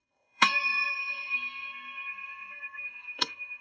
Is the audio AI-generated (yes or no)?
yes